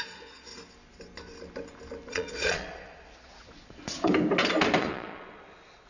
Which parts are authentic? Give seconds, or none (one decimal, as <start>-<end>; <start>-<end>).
0.5-2.1; 4.1-4.8